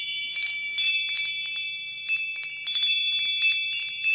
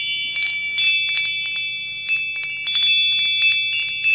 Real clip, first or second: second